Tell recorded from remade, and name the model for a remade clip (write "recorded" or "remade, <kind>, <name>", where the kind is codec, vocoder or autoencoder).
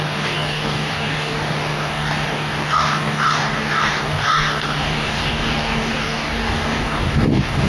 remade, codec, DAC